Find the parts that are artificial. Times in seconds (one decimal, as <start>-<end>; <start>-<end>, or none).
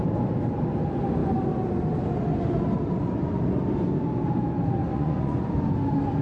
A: 4.9-5.5